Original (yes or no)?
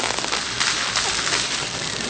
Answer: yes